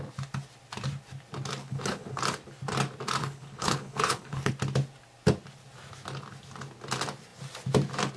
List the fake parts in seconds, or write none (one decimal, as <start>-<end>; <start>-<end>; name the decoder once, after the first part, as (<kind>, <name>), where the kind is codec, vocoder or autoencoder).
1.6-2.2 (codec, HILCodec); 3.2-4.5